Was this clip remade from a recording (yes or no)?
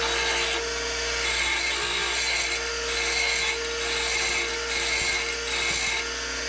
no